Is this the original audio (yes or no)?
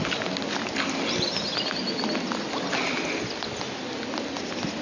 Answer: yes